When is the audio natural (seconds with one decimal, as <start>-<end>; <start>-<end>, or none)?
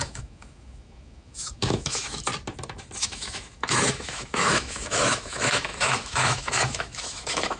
2.3-3.0